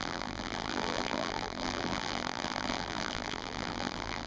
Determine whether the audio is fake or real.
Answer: fake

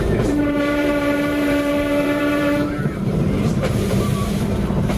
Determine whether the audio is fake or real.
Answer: fake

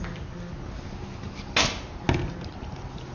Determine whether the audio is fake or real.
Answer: real